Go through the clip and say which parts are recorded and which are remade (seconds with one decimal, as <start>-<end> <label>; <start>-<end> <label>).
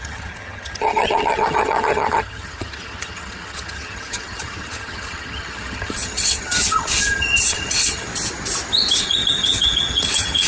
0.0-8.1 remade; 8.1-9.0 recorded; 9.0-10.5 remade